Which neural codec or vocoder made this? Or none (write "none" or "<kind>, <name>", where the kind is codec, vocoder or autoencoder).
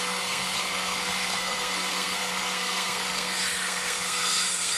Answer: codec, SNAC